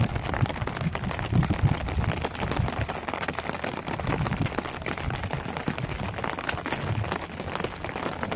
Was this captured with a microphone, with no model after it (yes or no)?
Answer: yes